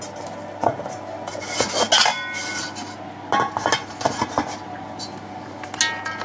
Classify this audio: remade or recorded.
recorded